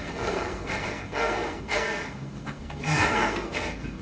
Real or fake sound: fake